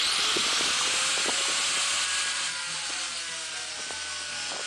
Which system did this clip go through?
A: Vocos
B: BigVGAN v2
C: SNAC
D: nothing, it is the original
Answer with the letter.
D